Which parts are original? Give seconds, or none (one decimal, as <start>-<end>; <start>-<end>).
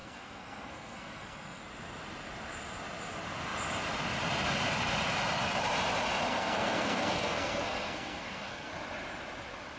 1.6-6.3; 8.7-9.8